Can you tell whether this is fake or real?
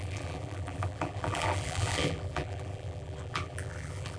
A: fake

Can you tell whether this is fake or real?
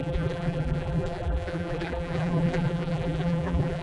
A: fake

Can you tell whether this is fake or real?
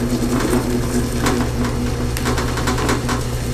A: real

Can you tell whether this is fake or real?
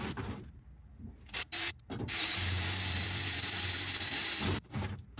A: fake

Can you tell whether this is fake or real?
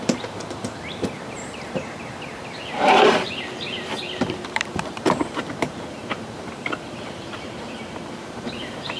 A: fake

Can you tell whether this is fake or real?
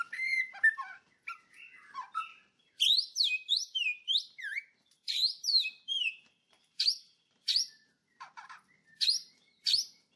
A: fake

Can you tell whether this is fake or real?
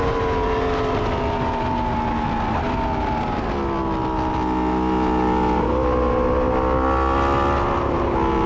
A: real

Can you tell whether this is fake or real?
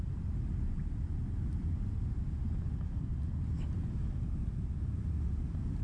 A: real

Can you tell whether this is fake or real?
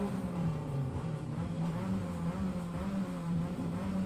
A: fake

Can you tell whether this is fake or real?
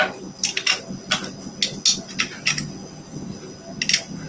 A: real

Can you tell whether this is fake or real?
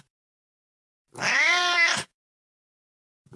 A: fake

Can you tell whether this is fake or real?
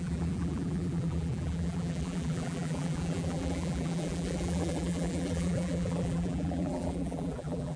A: fake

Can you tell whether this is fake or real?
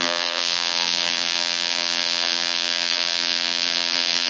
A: fake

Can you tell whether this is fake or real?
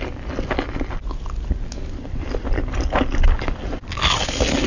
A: real